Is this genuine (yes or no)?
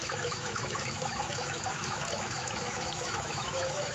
no